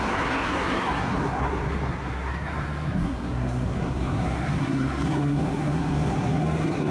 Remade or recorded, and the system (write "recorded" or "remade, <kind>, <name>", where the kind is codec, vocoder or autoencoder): remade, codec, SNAC